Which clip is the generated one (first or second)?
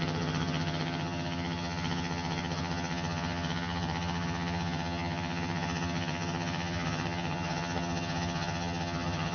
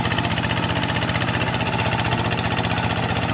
first